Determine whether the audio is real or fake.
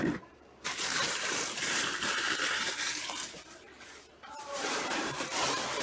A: fake